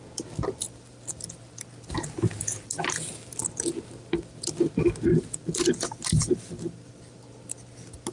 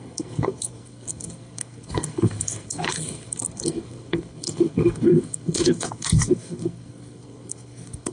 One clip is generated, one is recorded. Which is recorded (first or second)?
first